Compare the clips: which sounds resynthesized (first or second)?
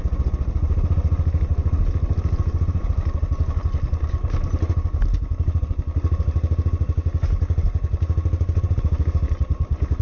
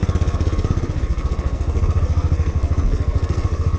second